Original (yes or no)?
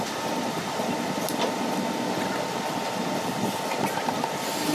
yes